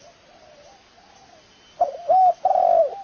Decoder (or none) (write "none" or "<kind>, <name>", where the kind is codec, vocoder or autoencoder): none